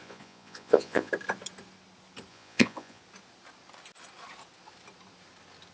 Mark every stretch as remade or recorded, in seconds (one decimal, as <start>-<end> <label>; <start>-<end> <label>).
0.0-1.1 remade; 1.1-2.3 recorded; 2.3-3.0 remade; 3.0-5.7 recorded